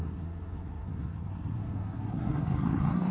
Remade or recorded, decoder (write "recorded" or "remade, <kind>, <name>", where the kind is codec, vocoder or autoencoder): remade, codec, SNAC